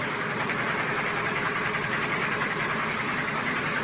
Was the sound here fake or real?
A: fake